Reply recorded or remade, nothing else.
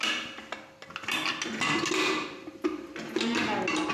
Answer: recorded